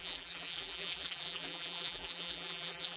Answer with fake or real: fake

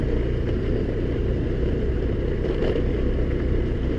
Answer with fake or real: fake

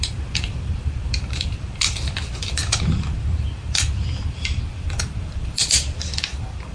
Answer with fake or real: fake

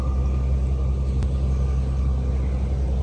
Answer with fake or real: real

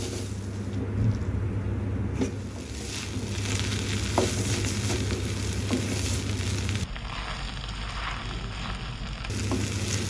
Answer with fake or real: real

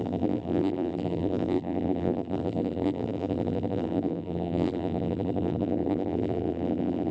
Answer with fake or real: fake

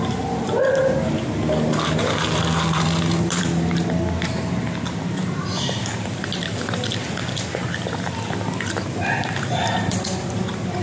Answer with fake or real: fake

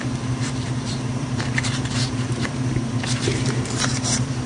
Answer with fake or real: fake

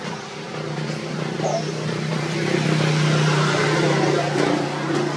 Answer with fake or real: fake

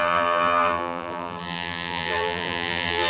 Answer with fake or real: fake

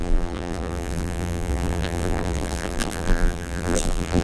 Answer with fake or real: fake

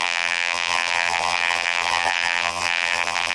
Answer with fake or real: fake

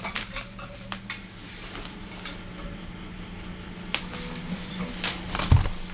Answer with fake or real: real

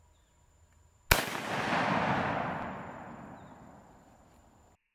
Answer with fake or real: real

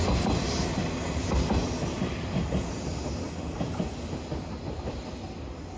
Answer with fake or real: real